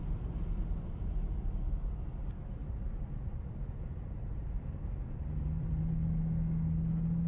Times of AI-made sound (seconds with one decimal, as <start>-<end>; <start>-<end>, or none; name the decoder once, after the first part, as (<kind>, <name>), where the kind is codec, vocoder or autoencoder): 2.6-5.8 (vocoder, BigVGAN v2)